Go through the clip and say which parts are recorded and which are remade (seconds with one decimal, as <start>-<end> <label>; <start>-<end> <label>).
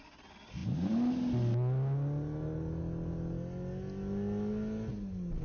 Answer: 0.0-5.4 recorded